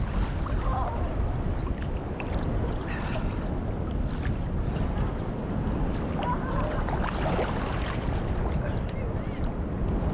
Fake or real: real